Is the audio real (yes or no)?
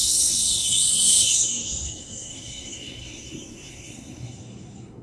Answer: no